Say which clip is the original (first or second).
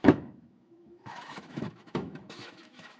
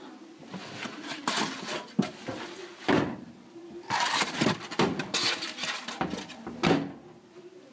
second